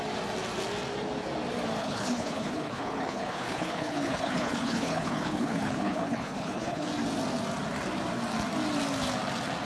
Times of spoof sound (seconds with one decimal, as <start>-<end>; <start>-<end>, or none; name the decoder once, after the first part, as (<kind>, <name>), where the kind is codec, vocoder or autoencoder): 1.8-6.9 (codec, HILCodec)